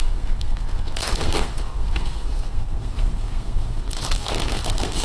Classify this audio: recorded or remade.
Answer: remade